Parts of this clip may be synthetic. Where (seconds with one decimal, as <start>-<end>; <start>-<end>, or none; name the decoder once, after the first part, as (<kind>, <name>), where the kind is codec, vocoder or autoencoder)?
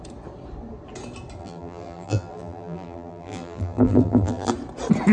1.4-4.5 (vocoder, BigVGAN v2)